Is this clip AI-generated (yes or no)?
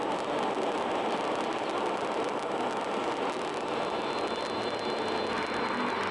no